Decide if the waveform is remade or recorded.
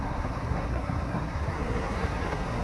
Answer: remade